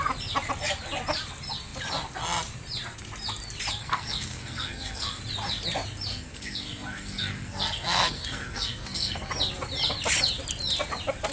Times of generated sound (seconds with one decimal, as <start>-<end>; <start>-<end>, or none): 3.8-5.2; 6.1-9.3